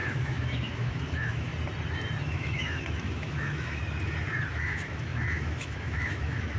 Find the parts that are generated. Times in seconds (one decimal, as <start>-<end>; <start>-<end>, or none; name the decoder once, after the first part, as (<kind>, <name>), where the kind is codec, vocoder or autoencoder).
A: 0.0-1.5 (autoencoder, DAC-VAE); 2.2-3.8; 4.5-6.6